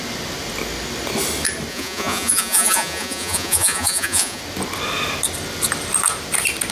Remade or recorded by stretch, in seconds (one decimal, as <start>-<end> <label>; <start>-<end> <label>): 0.0-1.7 recorded; 1.7-4.4 remade; 4.4-6.7 recorded